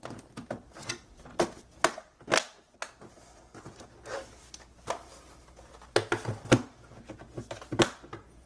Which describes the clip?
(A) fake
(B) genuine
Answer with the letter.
B